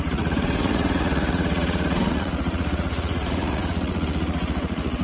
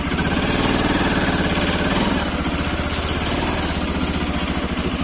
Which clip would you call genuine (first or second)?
second